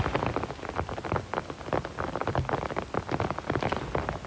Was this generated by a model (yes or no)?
no